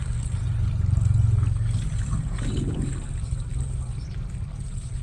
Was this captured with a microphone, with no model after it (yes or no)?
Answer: yes